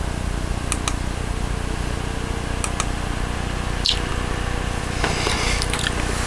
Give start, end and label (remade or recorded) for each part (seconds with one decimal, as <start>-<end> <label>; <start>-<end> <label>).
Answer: 0.0-6.3 recorded